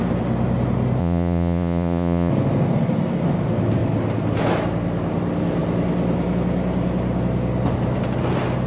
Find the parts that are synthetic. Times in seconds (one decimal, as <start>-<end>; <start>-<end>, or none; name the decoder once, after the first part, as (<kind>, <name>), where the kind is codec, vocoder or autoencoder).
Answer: 1.0-2.3 (vocoder, Vocos)